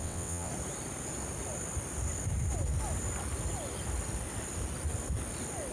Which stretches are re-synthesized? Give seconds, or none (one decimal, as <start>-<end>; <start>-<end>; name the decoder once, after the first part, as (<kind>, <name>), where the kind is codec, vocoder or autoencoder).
0.0-0.5 (vocoder, WaveNeXt)